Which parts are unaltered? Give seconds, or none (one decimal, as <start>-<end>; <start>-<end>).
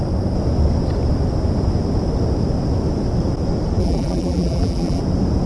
0.0-3.8; 5.0-5.5